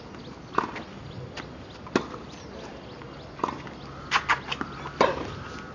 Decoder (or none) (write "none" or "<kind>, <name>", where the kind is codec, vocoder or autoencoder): none